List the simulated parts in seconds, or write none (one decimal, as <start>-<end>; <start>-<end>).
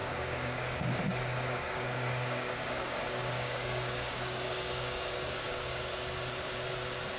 0.0-1.0; 1.5-5.8